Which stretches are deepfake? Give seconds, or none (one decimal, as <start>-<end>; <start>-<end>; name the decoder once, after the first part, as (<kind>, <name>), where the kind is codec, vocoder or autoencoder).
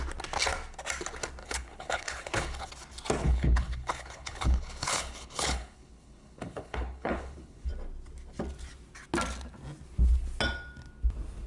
1.4-2.7 (codec, HILCodec); 3.2-7.7